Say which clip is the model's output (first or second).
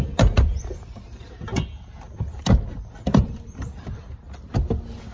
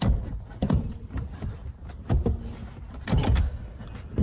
second